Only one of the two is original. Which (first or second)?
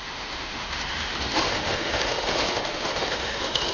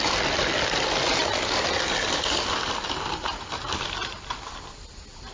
second